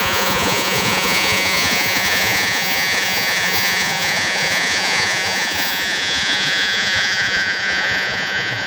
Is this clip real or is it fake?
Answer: fake